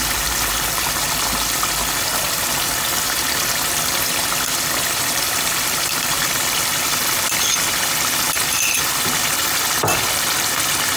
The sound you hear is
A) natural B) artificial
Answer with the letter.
A